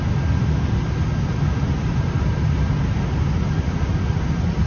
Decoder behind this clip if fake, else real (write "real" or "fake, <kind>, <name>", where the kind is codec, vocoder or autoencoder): real